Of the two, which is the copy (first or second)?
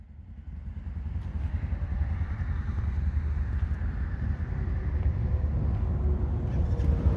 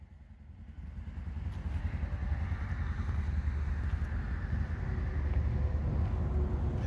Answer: first